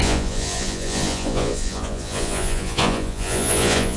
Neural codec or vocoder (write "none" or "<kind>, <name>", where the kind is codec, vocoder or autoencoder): vocoder, Vocos